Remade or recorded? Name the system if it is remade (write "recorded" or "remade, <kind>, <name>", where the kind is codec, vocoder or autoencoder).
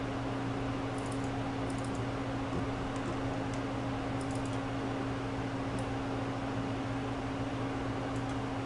recorded